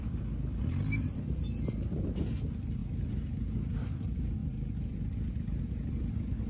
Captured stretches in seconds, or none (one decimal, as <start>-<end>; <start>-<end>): 2.8-3.9